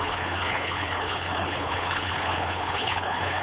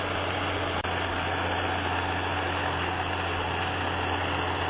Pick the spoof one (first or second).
first